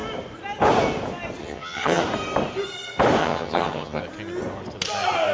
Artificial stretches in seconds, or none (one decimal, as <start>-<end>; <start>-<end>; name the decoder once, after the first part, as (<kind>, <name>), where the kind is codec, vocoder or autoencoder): 1.4-2.0 (vocoder, HiFi-GAN); 3.2-4.0